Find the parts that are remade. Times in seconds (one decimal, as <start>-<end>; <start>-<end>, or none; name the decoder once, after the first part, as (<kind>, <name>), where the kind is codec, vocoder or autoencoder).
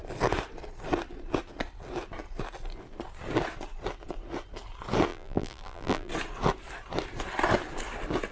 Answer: 5.1-6.1 (vocoder, BigVGAN v2)